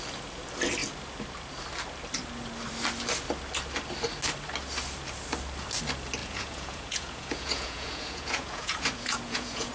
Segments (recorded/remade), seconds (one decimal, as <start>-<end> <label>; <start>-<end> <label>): 0.0-6.2 recorded; 6.2-9.7 remade